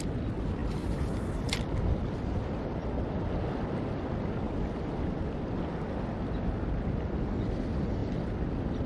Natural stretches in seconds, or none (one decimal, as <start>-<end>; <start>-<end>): 0.0-8.9